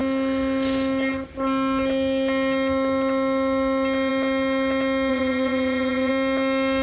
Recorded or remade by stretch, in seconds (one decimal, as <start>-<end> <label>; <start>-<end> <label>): 0.0-5.1 recorded; 5.1-6.1 remade; 6.1-6.8 recorded